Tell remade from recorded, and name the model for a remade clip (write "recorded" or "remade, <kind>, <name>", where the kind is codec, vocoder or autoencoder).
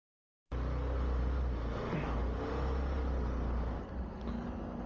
recorded